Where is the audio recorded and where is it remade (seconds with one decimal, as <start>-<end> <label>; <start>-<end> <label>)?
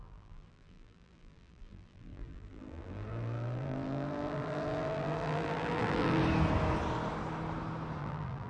0.0-6.2 remade; 6.2-8.0 recorded; 8.0-8.5 remade